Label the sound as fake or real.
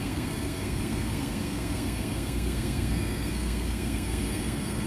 fake